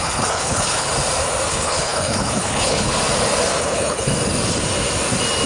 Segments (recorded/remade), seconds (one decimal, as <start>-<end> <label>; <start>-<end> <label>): 0.0-0.9 remade; 0.9-1.5 recorded; 1.5-2.9 remade; 2.9-3.6 recorded; 3.6-4.1 remade; 4.1-5.5 recorded